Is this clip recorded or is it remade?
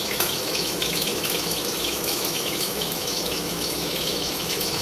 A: remade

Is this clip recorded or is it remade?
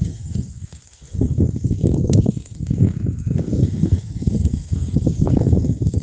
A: remade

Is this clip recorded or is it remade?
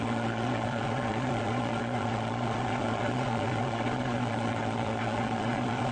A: remade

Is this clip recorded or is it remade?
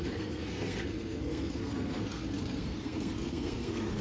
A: remade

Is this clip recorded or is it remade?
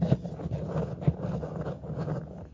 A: recorded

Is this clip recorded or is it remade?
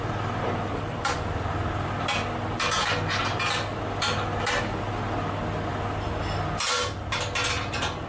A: recorded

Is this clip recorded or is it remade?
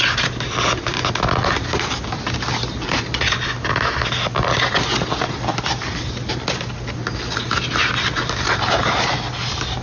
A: recorded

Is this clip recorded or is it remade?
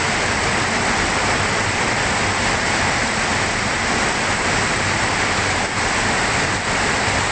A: recorded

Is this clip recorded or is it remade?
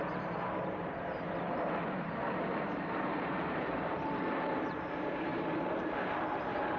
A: remade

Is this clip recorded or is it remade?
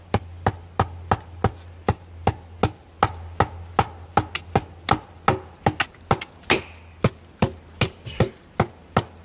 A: recorded